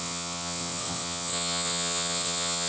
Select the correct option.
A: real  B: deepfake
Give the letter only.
B